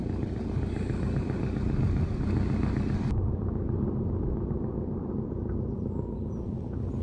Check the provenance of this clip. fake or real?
real